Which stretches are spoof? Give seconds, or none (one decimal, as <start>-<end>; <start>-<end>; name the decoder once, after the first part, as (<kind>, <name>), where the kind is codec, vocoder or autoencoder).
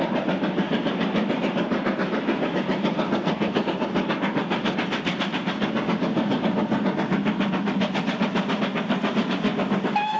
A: 3.1-3.6 (codec, SNAC)